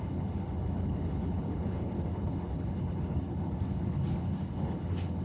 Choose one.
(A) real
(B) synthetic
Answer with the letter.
B